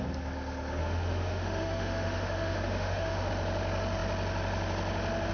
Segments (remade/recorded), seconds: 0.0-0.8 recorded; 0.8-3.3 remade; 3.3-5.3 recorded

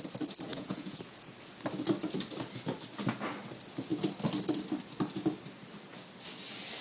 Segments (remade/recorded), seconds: 0.0-0.5 recorded; 0.5-1.3 remade; 1.3-6.8 recorded

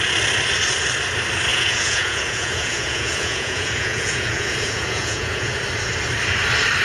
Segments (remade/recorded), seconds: 0.0-1.5 recorded; 1.5-5.6 remade; 5.6-6.8 recorded

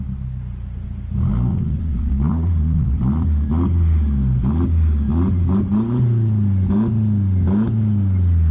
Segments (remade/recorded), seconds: 0.0-1.5 recorded; 1.5-3.0 remade; 3.0-8.5 recorded

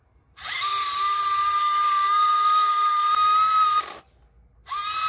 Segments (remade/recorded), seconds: 0.0-1.6 recorded; 1.6-3.0 remade; 3.0-5.1 recorded